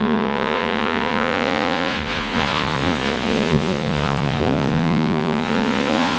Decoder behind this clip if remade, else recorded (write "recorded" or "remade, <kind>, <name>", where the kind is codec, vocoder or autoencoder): remade, vocoder, Vocos